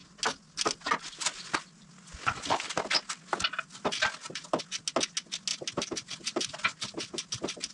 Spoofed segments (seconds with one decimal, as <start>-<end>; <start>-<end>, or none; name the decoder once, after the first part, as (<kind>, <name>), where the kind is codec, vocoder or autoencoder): none